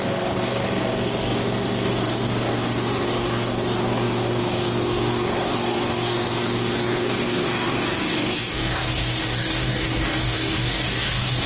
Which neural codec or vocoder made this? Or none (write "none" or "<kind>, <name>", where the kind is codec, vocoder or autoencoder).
codec, DAC